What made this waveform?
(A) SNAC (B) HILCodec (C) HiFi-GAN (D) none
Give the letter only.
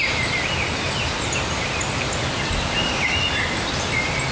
D